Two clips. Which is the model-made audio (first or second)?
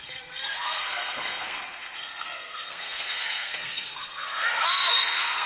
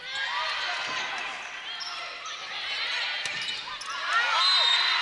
first